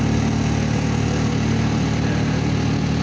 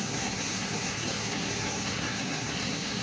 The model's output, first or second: second